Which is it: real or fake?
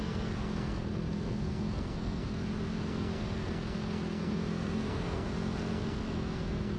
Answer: fake